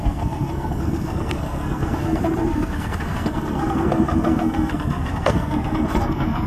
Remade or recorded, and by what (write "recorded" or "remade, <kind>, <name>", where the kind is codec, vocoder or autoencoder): remade, codec, SNAC